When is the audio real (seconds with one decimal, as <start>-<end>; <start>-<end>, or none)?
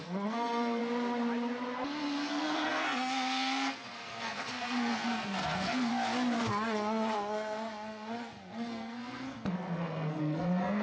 0.8-2.3; 5.9-6.5